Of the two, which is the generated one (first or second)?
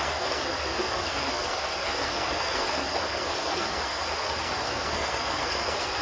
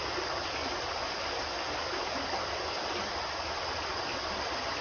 first